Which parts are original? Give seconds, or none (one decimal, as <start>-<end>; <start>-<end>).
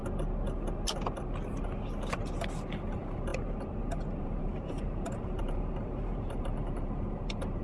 0.0-2.9; 3.3-4.2